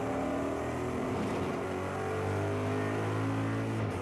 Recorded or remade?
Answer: recorded